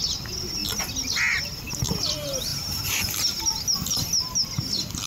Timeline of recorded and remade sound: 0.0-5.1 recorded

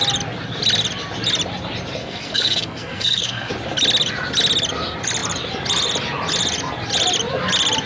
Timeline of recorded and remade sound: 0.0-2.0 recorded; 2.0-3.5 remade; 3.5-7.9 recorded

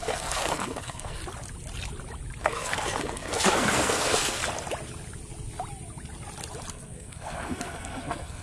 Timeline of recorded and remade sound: 0.0-1.2 remade; 1.2-2.4 recorded; 2.4-4.4 remade; 4.4-6.7 recorded; 6.7-8.4 remade

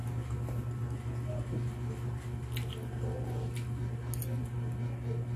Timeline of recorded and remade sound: 0.0-5.4 recorded

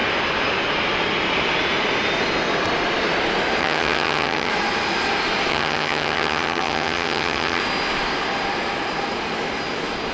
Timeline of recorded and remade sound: 0.0-3.6 recorded; 3.6-4.5 remade; 4.5-5.5 recorded; 5.5-7.6 remade; 7.6-10.1 recorded

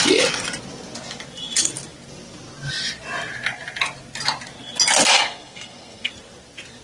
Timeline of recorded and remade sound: 0.0-5.1 recorded; 5.1-6.1 remade; 6.1-6.8 recorded

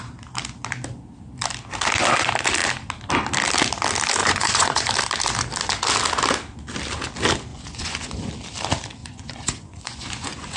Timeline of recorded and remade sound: 0.0-4.2 recorded; 4.2-4.9 remade; 4.9-7.5 recorded; 7.5-8.3 remade; 8.3-9.0 recorded; 9.0-10.6 remade

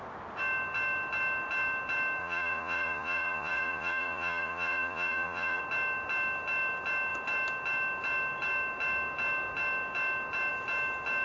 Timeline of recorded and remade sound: 0.0-2.2 recorded; 2.2-5.6 remade; 5.6-11.2 recorded